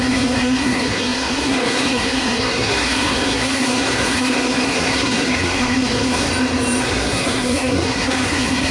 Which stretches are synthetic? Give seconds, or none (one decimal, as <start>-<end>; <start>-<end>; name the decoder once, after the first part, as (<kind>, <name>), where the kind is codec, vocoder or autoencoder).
0.0-6.3 (codec, SNAC); 6.8-8.7